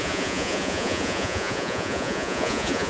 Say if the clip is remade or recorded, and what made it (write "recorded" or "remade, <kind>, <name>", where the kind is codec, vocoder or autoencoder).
remade, vocoder, Vocos